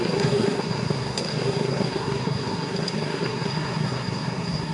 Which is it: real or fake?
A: fake